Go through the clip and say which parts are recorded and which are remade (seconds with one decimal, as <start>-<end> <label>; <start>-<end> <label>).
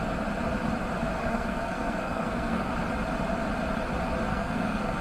0.0-1.2 recorded; 1.2-2.7 remade; 2.7-4.3 recorded; 4.3-5.0 remade